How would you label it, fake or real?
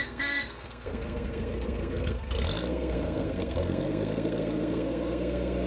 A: fake